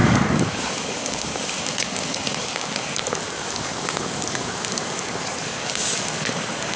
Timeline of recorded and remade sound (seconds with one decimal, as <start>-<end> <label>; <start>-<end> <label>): 0.0-6.8 remade

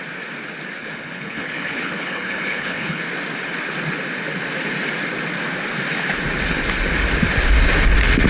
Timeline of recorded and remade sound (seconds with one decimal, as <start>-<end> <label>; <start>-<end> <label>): 0.0-0.8 recorded; 0.8-3.0 remade; 3.0-8.3 recorded

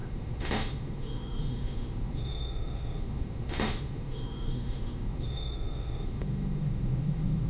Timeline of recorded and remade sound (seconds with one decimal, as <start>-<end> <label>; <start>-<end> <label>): 0.0-7.5 remade

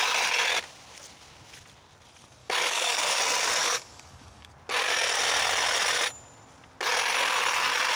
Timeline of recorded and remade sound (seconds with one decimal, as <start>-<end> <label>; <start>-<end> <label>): 0.0-2.4 recorded; 2.4-3.2 remade; 3.2-3.6 recorded; 3.6-4.5 remade; 4.5-8.0 recorded

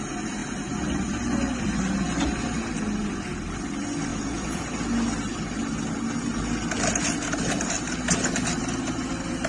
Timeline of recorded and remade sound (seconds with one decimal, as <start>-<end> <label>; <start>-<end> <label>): 0.0-4.1 recorded; 4.1-4.6 remade; 4.6-9.5 recorded

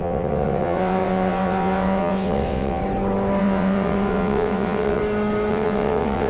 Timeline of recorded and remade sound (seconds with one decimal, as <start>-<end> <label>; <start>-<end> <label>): 0.0-2.8 remade; 2.8-3.4 recorded; 3.4-5.0 remade; 5.0-5.5 recorded; 5.5-6.3 remade

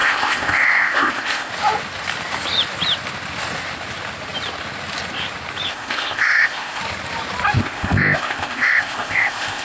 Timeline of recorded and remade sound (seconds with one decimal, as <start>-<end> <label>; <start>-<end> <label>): 0.0-1.5 remade; 1.5-5.7 recorded; 5.7-6.8 remade; 6.8-7.6 recorded; 7.6-9.6 remade

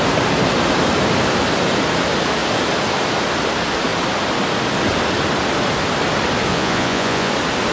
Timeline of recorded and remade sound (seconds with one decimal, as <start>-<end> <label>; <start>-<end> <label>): 0.0-6.5 recorded; 6.5-7.3 remade; 7.3-7.7 recorded